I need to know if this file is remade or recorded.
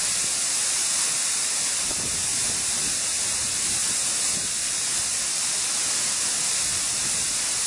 recorded